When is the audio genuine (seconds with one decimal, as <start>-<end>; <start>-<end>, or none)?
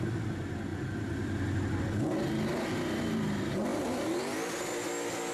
0.0-0.7; 1.8-3.7; 4.7-5.3